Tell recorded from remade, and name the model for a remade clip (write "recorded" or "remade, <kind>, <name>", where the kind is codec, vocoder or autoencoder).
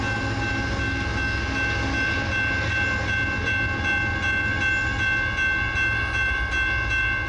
recorded